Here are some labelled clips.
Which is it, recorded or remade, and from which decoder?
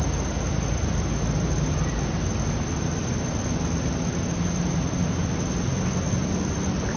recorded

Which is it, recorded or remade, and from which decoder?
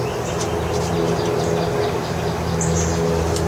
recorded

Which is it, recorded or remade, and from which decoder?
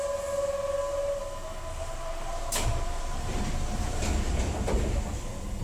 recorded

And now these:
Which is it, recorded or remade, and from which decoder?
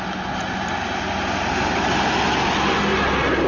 recorded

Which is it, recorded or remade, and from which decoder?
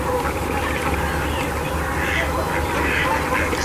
recorded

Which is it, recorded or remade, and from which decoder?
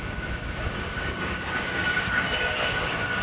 remade, codec, DAC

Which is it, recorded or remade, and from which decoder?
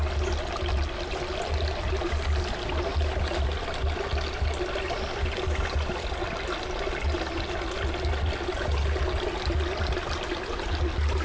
recorded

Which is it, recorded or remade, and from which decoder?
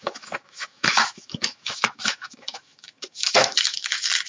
remade, autoencoder, DAC-VAE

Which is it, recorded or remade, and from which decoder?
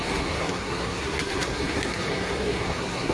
remade, codec, SNAC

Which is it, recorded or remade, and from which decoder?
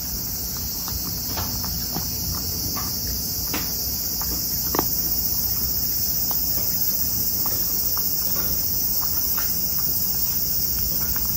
recorded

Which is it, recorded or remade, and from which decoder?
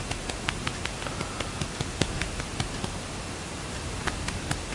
recorded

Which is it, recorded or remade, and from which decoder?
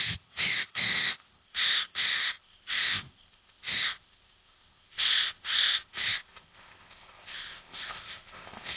remade, codec, ZipCodec